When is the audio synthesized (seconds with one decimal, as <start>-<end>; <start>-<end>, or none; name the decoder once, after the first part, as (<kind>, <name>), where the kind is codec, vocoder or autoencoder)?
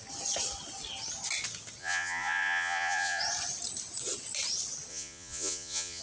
1.8-3.2 (vocoder, Vocos); 4.9-6.0